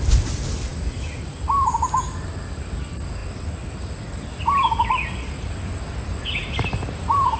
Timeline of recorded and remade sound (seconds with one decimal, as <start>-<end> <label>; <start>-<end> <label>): 0.0-7.4 recorded